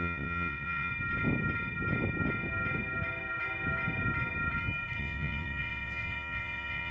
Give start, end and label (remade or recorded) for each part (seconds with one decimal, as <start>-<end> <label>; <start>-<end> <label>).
0.0-0.9 remade; 0.9-5.0 recorded; 5.0-6.9 remade